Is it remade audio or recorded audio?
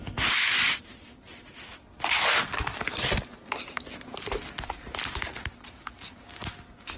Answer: recorded